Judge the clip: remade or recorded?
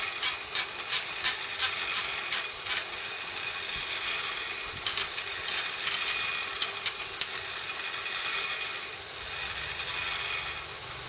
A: recorded